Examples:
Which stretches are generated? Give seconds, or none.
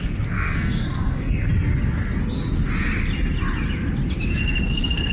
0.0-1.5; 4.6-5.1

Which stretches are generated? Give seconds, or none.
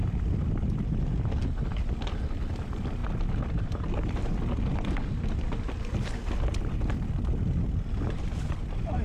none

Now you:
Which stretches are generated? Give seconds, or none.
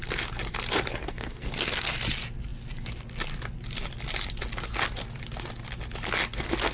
1.0-1.5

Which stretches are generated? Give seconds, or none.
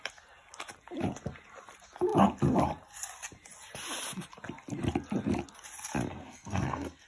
6.1-7.1